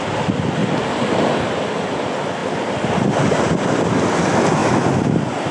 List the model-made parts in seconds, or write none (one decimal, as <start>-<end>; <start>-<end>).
none